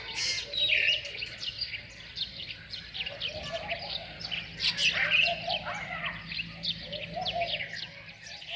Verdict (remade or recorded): recorded